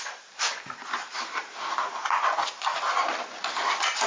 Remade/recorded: recorded